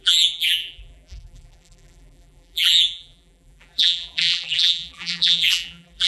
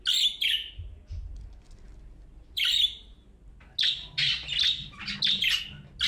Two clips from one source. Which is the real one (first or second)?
second